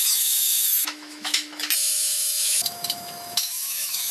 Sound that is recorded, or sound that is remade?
remade